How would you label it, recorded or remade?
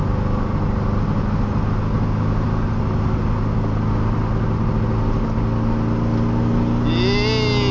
recorded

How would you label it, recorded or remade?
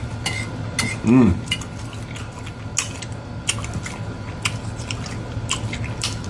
recorded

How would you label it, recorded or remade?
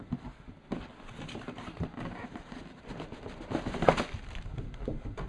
recorded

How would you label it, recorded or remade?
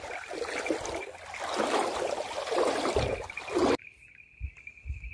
recorded